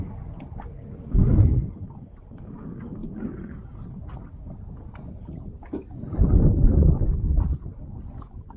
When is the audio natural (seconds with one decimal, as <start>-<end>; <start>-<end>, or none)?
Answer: 0.0-1.6; 2.4-8.6